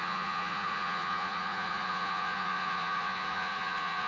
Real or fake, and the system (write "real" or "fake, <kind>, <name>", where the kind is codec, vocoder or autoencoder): fake, vocoder, Vocos